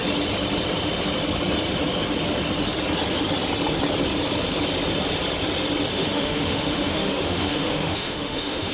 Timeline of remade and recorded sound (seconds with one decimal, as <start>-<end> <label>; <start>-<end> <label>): 0.0-5.9 recorded; 5.9-8.7 remade